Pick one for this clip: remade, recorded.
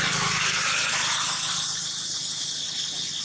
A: recorded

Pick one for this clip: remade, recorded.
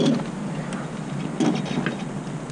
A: recorded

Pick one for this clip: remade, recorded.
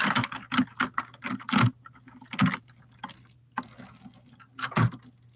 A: recorded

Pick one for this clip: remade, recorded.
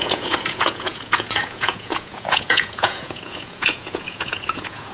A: remade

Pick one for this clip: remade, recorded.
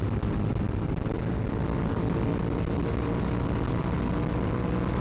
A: recorded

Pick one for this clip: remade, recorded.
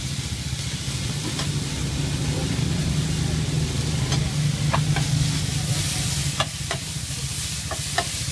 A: recorded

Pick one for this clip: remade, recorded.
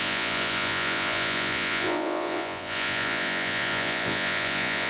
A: remade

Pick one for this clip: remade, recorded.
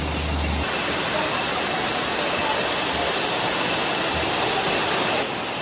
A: recorded